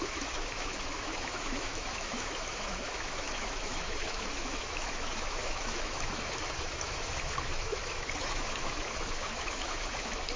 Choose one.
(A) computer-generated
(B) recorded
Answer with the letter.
A